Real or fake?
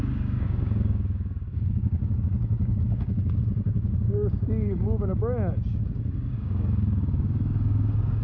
fake